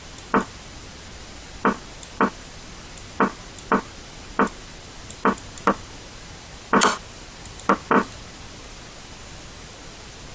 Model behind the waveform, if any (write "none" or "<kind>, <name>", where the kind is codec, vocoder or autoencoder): none